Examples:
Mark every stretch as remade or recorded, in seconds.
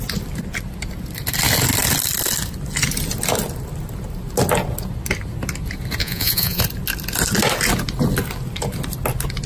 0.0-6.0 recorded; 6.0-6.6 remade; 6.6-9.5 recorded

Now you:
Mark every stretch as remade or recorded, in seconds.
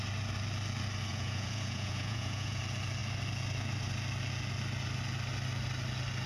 0.0-1.1 recorded; 1.1-2.6 remade; 2.6-6.3 recorded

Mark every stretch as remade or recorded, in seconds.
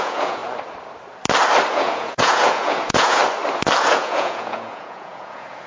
0.0-0.4 remade; 0.4-1.7 recorded; 1.7-3.2 remade; 3.2-3.8 recorded; 3.8-5.7 remade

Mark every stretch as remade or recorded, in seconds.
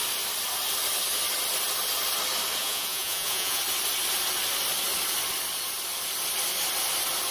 0.0-2.6 recorded; 2.6-3.6 remade; 3.6-7.3 recorded